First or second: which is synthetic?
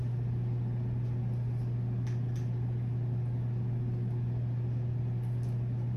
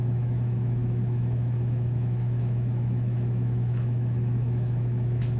second